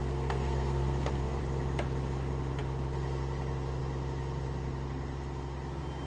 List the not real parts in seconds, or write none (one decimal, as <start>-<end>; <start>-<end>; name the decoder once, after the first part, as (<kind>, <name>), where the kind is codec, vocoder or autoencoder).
0.0-1.4 (codec, SNAC)